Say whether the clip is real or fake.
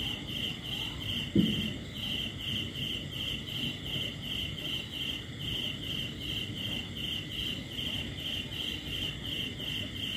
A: real